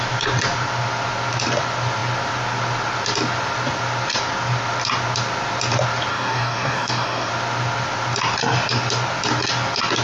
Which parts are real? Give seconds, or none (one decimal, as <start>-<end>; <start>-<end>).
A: 0.0-6.1; 7.3-10.0